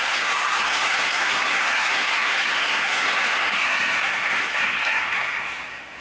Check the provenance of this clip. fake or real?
fake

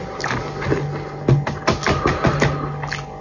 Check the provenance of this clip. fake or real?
real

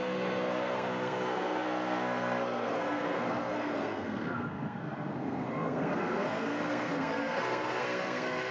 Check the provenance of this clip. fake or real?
fake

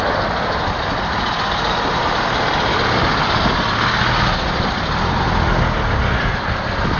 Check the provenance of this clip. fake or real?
real